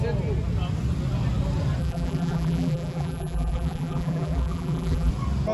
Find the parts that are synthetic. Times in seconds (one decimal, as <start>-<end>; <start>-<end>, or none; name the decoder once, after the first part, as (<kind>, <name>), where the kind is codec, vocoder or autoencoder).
1.8-5.1 (vocoder, BigVGAN v2)

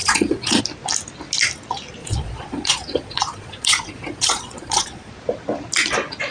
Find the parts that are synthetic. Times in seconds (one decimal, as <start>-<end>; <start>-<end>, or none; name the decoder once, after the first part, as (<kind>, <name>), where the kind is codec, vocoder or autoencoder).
0.0-0.6 (vocoder, Vocos); 2.0-5.1

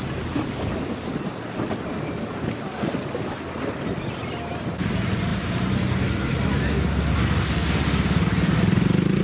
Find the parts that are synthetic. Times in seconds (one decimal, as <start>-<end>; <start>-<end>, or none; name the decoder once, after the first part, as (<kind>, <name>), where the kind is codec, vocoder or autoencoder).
none

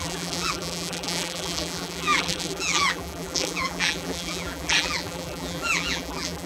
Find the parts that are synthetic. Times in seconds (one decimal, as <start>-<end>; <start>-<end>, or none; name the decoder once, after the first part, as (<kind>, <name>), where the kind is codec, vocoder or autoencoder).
0.0-6.5 (vocoder, BigVGAN v2)

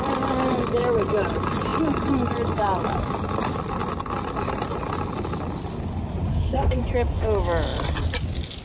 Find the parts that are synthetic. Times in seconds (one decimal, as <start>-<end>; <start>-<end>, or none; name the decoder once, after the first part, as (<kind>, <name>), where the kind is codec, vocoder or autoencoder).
6.3-6.8 (codec, SNAC)

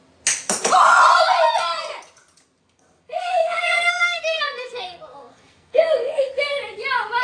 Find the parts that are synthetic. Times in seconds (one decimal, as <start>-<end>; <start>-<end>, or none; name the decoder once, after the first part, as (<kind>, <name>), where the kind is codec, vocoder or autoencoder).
2.6-6.3 (codec, SNAC)

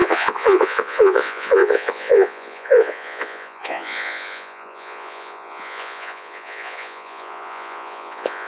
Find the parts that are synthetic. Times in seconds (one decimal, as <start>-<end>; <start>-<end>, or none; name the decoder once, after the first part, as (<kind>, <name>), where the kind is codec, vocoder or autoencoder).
0.0-8.5 (vocoder, Vocos)